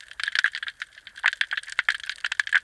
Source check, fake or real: real